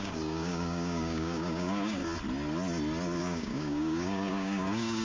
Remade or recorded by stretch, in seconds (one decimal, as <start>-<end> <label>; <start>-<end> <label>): 0.0-2.0 remade; 2.0-3.2 recorded; 3.2-5.0 remade